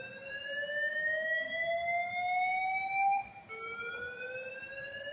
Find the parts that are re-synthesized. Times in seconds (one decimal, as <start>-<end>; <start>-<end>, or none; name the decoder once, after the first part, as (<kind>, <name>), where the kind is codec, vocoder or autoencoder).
none